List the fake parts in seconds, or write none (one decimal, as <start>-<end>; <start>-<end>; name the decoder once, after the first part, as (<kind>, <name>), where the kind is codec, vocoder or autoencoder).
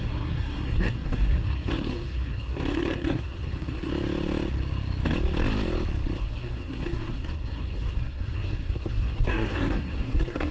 0.0-3.9 (codec, SNAC); 6.2-10.5